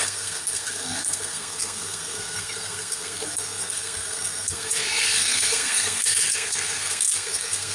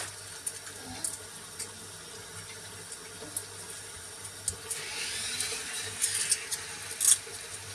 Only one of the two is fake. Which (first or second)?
first